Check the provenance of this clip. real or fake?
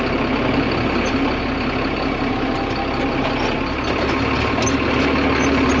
real